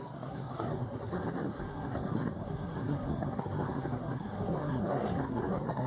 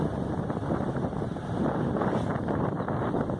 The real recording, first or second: second